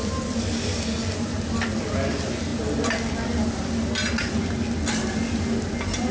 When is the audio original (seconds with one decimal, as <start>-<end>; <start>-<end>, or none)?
0.0-6.1